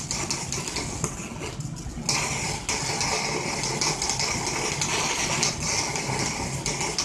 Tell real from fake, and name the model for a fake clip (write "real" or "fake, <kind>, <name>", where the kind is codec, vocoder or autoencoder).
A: real